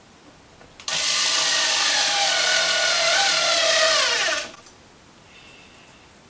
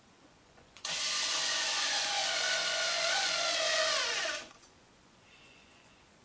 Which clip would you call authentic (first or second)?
first